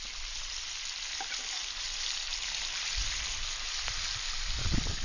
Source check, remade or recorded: recorded